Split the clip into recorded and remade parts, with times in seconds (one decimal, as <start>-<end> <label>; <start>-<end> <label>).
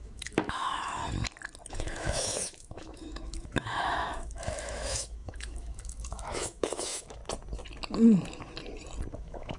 0.0-1.0 remade; 1.0-1.7 recorded; 1.7-7.2 remade; 7.2-9.1 recorded; 9.1-9.6 remade